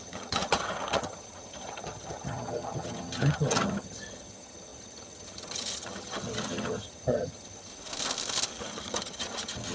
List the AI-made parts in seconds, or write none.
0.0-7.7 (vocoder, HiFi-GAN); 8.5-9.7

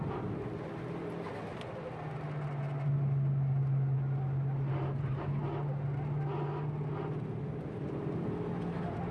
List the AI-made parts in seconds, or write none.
none

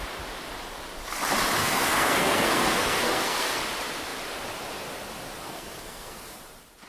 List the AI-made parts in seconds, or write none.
1.6-3.6 (codec, SNAC); 5.4-6.4

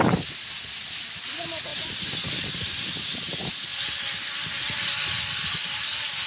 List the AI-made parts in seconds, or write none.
1.7-2.8 (vocoder, BigVGAN v2)

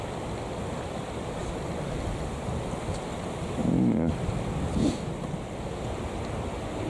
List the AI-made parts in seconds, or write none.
none

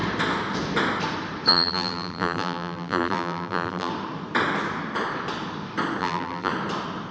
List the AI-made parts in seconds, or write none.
1.5-3.9 (vocoder, BigVGAN v2); 6.0-6.5